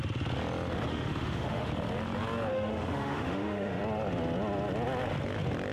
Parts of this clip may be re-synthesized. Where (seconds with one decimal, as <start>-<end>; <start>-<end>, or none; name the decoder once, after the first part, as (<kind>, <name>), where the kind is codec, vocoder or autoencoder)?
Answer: 0.9-1.7 (autoencoder, DAC-VAE); 2.5-3.8